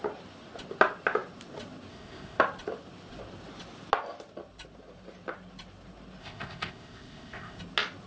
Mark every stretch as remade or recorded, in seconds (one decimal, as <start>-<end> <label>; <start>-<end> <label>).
0.0-1.9 recorded; 1.9-2.4 remade; 2.4-6.2 recorded; 6.2-7.6 remade; 7.6-8.1 recorded